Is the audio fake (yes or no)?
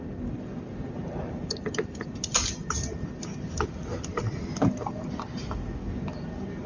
no